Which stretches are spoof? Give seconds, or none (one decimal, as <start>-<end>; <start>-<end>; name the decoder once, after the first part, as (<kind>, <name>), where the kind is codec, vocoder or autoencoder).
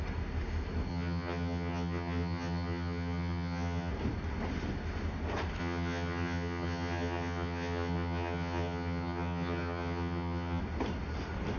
0.9-3.9 (vocoder, HiFi-GAN); 5.6-10.6